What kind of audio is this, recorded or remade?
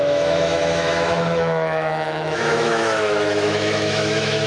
remade